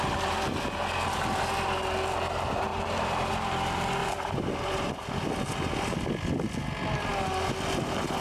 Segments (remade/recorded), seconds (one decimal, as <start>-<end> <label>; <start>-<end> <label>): 0.0-2.7 recorded; 2.7-3.3 remade; 3.3-4.0 recorded; 4.0-5.0 remade; 5.0-8.2 recorded